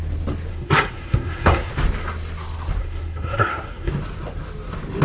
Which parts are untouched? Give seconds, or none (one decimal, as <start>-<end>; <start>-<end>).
0.0-0.5; 1.7-2.8; 3.9-5.0